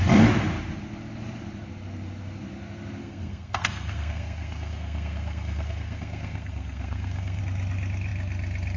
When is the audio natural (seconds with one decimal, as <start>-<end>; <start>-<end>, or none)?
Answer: 0.0-3.0; 7.4-8.8